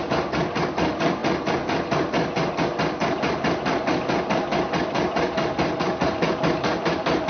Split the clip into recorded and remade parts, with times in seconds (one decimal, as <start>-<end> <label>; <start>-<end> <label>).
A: 0.0-7.3 recorded